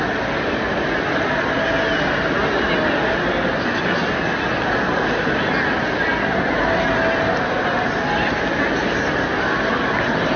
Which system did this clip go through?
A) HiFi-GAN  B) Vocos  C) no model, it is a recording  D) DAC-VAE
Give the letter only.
C